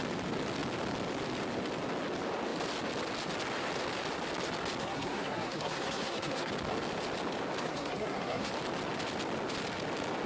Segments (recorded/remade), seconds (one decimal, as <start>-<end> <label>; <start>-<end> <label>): 0.0-4.8 recorded; 4.8-6.5 remade; 6.5-7.6 recorded; 7.6-8.5 remade; 8.5-10.3 recorded